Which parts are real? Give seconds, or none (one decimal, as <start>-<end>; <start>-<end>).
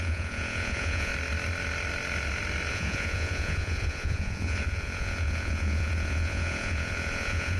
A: 1.1-2.7